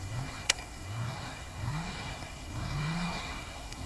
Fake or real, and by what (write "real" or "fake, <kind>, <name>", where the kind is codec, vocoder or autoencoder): fake, codec, SNAC